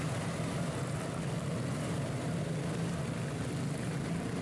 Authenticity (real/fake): real